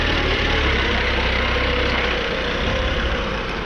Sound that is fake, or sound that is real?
fake